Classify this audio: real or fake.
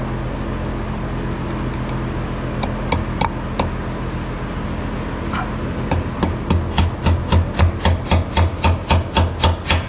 real